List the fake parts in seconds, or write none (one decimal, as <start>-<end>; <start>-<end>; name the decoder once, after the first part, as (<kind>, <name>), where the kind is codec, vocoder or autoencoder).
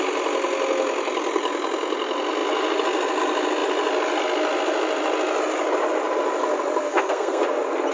6.8-7.4 (codec, SNAC)